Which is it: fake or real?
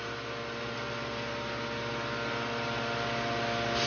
real